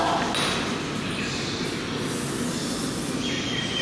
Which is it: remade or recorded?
recorded